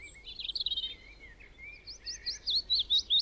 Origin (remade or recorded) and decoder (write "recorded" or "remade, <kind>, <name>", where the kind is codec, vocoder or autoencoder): recorded